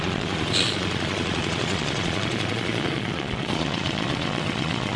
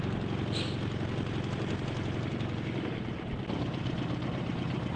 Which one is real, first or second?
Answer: second